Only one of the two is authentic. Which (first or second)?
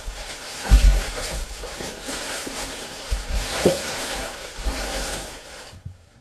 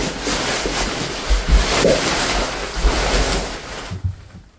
second